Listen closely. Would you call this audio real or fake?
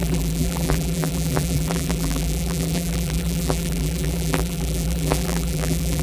fake